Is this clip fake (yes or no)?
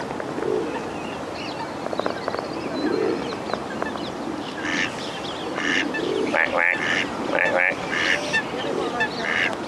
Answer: no